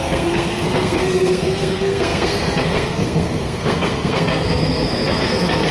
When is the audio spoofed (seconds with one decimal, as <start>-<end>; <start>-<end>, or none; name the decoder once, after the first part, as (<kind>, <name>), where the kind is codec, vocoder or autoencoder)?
0.0-5.7 (codec, SNAC)